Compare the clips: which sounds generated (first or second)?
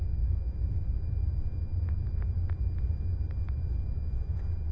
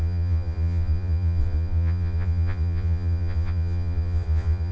second